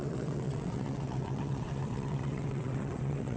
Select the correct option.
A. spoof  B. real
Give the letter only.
A